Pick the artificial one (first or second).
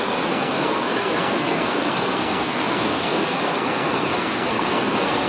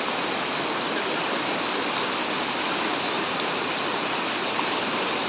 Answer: first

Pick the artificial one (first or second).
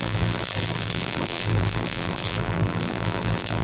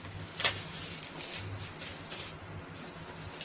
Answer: first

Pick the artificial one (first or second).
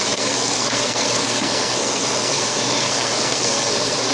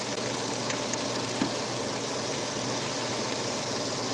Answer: first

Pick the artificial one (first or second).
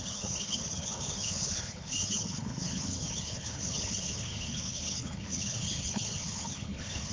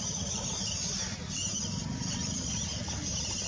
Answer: first